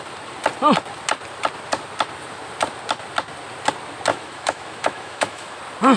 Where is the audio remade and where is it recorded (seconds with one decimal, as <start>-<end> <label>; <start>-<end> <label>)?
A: 0.0-4.1 recorded; 4.1-5.6 remade; 5.6-6.0 recorded